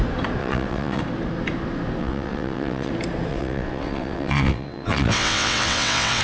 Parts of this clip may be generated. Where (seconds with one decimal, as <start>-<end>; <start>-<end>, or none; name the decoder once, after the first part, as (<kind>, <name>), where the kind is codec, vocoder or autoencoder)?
0.4-1.0 (vocoder, WaveNeXt); 2.0-2.9; 3.3-6.2